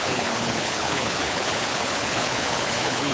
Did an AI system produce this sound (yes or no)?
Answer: yes